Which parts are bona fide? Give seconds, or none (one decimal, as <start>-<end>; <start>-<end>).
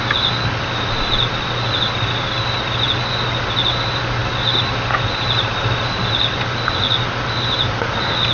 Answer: 0.0-8.3